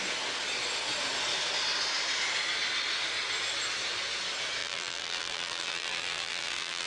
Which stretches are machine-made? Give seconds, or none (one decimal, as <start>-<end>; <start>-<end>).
4.6-6.9